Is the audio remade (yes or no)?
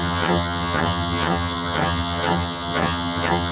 yes